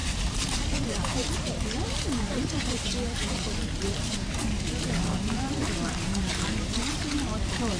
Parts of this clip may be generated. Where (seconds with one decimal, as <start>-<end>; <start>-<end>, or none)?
0.0-4.3